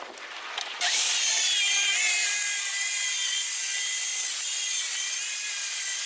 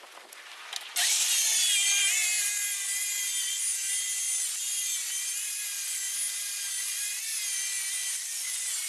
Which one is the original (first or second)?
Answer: second